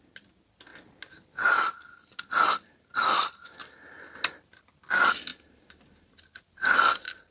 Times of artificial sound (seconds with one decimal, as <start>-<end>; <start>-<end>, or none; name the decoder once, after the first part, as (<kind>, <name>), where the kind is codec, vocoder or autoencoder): 5.3-6.8 (vocoder, BigVGAN v2)